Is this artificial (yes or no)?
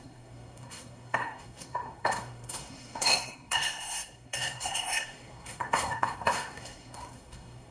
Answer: yes